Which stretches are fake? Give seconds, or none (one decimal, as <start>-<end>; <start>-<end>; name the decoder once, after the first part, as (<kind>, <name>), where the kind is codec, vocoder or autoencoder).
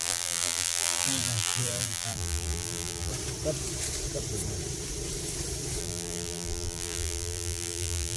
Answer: 0.0-3.1 (vocoder, BigVGAN v2); 5.8-8.2